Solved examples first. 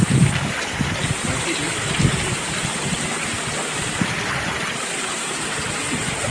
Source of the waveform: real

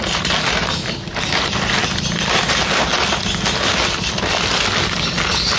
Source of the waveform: real